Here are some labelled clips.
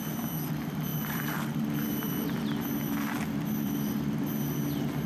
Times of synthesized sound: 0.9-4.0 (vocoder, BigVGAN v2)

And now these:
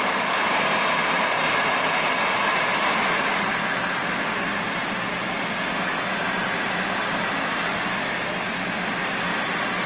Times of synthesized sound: 2.7-3.8 (vocoder, BigVGAN v2); 4.8-5.5; 6.1-9.9